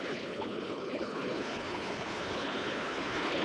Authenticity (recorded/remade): remade